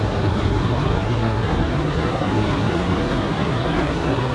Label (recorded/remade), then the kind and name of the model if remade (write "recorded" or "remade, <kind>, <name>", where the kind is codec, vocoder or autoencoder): remade, codec, SNAC